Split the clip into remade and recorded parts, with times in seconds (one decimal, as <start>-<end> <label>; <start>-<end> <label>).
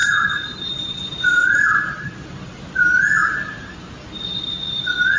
0.0-5.2 recorded